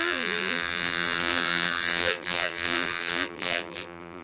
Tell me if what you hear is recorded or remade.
remade